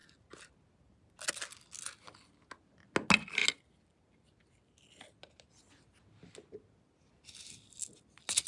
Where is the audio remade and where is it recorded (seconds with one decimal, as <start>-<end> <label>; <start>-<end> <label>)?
0.0-8.5 recorded

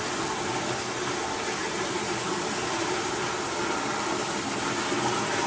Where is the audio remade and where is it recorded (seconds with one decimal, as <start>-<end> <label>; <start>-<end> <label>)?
0.0-1.6 recorded; 1.6-3.3 remade; 3.3-5.5 recorded

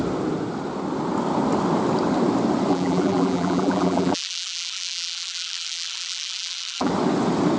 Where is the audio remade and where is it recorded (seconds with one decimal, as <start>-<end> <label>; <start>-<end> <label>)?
0.0-2.7 recorded; 2.7-6.9 remade; 6.9-7.6 recorded

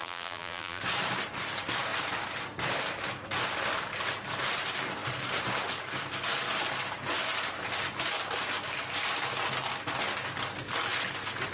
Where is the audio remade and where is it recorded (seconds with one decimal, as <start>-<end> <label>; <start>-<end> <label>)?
0.0-0.8 remade; 0.8-11.5 recorded